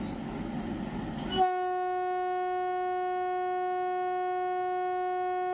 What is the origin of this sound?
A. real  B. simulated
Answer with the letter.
A